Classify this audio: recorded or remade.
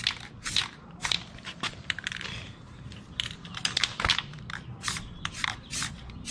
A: remade